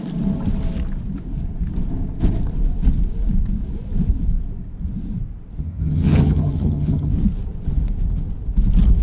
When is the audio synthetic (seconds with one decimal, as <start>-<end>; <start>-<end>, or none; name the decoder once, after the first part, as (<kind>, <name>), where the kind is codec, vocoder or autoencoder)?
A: 5.6-7.1 (vocoder, HiFi-GAN)